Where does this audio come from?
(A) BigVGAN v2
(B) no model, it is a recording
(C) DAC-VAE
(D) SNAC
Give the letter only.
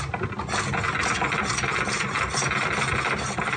B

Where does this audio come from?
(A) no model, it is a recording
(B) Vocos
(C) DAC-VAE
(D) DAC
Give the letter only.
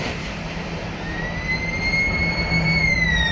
A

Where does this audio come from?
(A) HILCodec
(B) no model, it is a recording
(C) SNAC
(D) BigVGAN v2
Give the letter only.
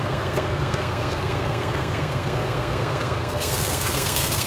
C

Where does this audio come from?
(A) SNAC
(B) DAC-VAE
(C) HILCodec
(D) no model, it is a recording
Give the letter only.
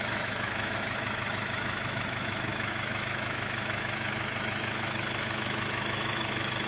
B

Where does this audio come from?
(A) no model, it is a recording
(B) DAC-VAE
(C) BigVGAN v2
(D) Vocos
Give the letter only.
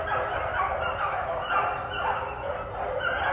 A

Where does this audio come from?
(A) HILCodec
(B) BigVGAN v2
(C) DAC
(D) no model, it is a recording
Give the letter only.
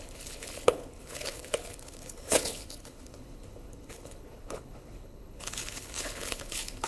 A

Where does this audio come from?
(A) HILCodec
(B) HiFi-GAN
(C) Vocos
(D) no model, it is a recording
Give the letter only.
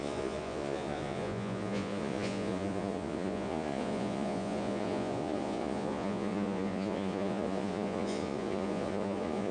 C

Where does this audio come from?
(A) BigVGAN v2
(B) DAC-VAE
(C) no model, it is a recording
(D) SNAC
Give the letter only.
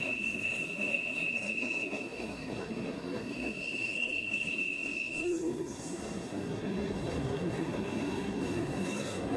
D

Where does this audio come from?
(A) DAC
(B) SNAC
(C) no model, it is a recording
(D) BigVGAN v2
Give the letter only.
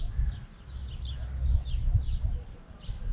C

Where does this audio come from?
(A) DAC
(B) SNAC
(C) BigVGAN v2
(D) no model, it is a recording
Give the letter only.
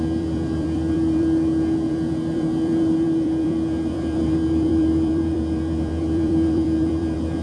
C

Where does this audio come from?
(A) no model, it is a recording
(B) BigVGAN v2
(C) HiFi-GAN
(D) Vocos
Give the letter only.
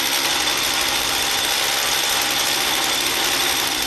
A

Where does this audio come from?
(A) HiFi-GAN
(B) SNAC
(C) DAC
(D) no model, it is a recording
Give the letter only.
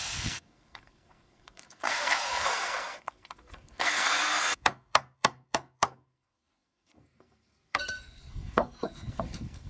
B